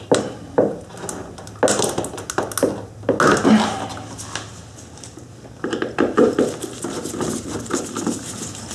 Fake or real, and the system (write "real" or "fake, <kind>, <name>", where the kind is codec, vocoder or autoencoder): real